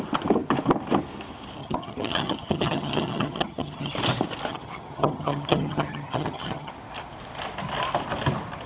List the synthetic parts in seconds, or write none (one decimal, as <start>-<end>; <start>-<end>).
1.6-3.9; 4.5-6.7